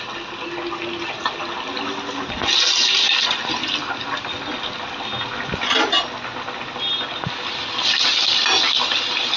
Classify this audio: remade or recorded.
recorded